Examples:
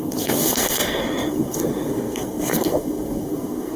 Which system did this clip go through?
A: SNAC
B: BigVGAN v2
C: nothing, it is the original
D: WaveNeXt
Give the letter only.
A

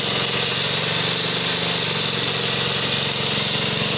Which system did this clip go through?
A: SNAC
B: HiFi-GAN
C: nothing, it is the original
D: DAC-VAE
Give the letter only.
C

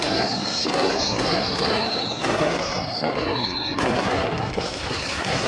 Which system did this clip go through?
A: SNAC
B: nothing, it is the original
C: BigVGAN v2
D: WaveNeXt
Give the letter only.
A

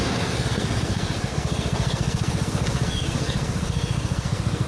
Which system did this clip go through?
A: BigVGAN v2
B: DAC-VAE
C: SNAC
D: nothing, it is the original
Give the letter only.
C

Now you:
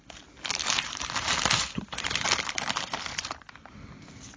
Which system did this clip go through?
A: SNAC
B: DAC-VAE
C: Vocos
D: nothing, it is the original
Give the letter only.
D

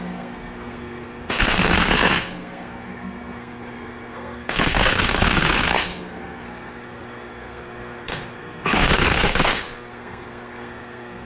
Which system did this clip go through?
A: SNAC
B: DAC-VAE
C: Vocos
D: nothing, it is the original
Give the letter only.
A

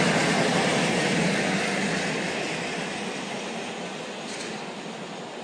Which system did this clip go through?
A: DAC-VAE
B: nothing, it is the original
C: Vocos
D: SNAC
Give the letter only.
B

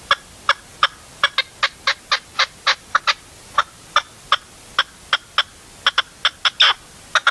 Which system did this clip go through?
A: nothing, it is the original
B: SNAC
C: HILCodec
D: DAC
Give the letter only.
A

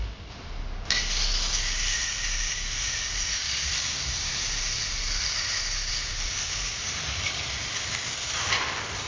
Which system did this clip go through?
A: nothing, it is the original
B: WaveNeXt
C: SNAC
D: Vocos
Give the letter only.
A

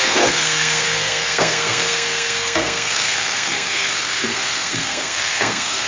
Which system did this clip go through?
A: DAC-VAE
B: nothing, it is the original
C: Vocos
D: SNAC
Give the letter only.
D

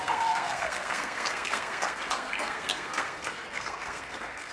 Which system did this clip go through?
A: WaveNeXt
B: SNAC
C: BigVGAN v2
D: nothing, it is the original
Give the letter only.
B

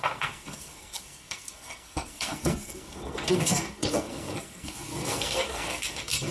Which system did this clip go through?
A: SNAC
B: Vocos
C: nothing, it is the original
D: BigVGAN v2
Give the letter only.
A